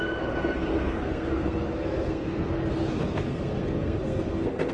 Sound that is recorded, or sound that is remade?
remade